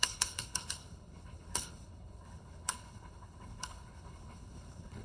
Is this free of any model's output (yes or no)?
no